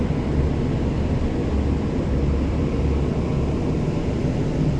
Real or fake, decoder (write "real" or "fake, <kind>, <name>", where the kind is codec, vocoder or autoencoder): real